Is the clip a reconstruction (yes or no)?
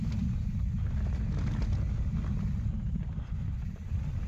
no